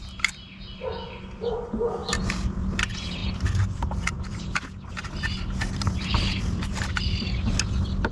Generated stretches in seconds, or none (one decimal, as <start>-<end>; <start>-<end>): 3.2-4.4